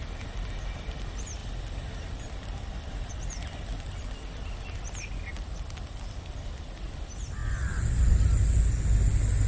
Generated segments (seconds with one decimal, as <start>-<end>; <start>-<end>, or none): none